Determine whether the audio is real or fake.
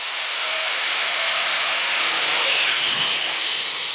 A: fake